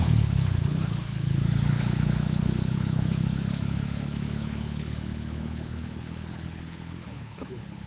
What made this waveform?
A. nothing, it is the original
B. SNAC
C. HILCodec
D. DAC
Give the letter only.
C